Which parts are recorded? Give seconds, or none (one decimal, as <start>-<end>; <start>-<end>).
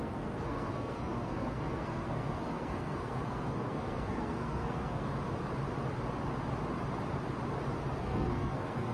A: 5.1-8.0